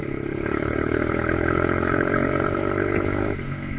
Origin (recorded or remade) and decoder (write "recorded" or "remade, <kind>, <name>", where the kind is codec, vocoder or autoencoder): remade, codec, HILCodec